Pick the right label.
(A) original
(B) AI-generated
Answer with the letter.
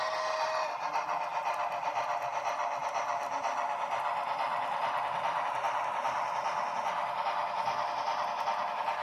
A